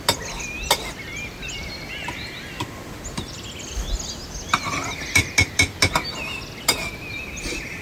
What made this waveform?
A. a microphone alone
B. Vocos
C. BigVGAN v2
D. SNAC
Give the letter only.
A